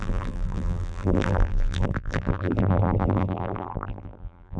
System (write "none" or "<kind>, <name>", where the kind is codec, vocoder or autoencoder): vocoder, BigVGAN v2